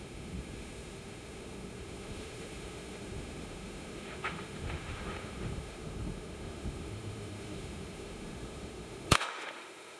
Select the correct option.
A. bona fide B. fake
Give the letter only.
B